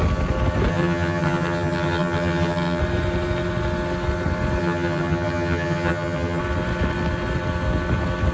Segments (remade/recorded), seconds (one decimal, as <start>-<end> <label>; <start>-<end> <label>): 0.0-0.7 recorded; 0.7-2.8 remade; 2.8-4.6 recorded; 4.6-6.4 remade; 6.4-8.3 recorded